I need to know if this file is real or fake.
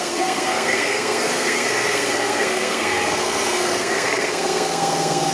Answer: fake